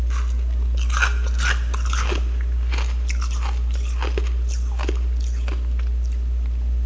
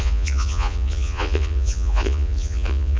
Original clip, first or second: first